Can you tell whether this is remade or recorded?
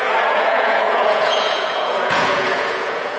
remade